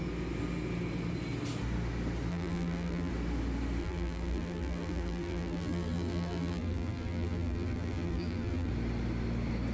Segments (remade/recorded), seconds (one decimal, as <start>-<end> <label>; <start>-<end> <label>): 0.0-2.3 recorded; 2.3-3.1 remade; 3.1-3.8 recorded; 3.8-8.7 remade; 8.7-9.7 recorded